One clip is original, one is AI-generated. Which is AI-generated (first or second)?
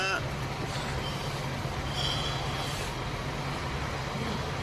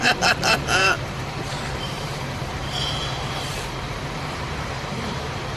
second